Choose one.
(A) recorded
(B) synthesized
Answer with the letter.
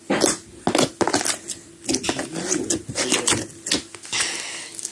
A